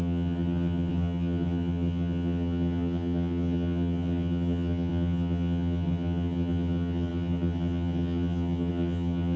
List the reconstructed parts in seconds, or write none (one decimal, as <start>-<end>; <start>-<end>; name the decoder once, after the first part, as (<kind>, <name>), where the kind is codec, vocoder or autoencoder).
0.0-9.4 (vocoder, HiFi-GAN)